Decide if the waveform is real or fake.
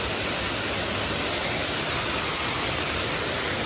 real